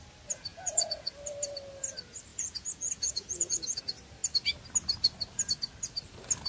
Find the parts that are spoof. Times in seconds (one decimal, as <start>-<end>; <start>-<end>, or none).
0.5-1.1; 2.3-3.8